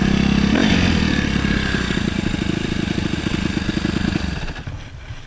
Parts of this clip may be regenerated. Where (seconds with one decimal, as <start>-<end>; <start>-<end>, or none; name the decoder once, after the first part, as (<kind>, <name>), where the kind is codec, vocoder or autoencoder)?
0.6-3.2 (vocoder, BigVGAN v2)

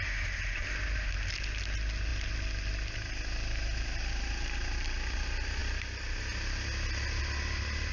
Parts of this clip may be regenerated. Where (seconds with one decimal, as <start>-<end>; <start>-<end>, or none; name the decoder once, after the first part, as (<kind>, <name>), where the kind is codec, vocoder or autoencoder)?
none